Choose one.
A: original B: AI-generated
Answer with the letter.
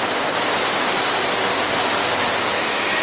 A